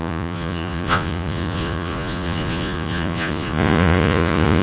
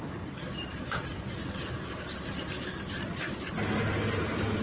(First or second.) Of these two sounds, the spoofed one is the first